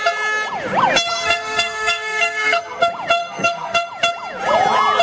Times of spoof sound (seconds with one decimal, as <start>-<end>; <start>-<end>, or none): 1.1-2.8; 3.2-3.9